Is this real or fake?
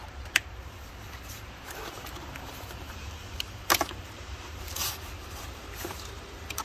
fake